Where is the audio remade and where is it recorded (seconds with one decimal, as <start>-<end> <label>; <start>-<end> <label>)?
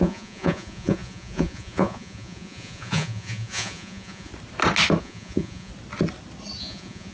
0.0-4.3 remade; 4.3-5.0 recorded; 5.0-5.7 remade; 5.7-6.6 recorded; 6.6-7.1 remade